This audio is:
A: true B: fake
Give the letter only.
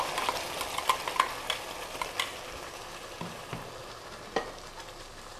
A